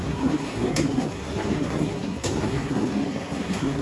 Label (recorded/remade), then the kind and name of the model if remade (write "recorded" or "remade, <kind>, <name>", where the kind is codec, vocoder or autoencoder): remade, codec, SNAC